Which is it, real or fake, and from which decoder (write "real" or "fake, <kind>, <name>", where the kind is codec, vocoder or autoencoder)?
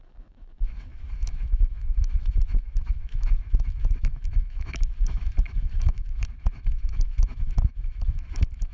fake, autoencoder, DAC-VAE